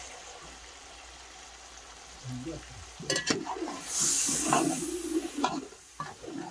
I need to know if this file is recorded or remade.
recorded